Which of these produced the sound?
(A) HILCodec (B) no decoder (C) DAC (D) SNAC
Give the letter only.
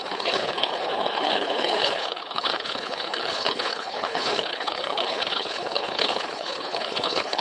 A